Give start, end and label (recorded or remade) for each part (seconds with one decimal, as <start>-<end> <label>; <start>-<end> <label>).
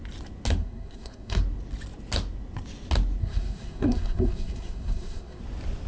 0.0-0.6 recorded; 0.6-1.4 remade; 1.4-3.2 recorded; 3.2-5.4 remade; 5.4-5.9 recorded